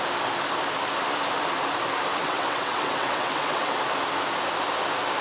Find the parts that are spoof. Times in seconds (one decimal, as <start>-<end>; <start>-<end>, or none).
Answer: 2.2-3.8